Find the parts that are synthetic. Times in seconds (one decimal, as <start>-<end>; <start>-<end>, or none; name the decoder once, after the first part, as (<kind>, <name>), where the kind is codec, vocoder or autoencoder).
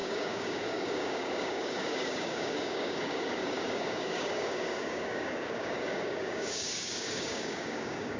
0.0-8.2 (codec, DAC)